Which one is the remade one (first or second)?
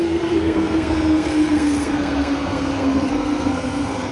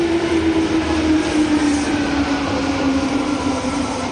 first